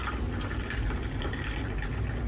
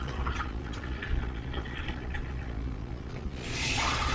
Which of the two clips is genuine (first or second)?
first